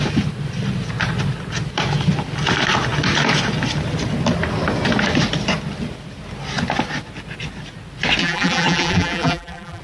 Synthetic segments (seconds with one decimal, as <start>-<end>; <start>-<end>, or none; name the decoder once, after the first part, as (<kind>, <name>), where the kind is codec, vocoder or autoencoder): 8.2-9.8 (vocoder, BigVGAN v2)